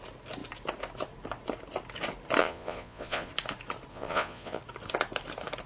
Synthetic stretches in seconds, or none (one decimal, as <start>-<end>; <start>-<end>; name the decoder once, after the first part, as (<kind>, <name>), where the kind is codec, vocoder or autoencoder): 2.4-3.3 (vocoder, Vocos); 3.9-4.6